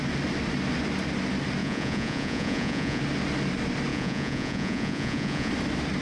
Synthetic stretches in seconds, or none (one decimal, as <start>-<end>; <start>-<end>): 1.6-3.0; 3.9-5.5